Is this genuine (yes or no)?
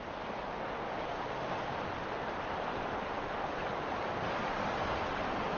yes